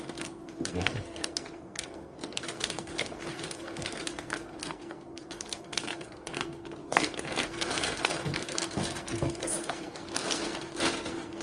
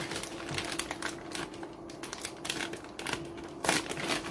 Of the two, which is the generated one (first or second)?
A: first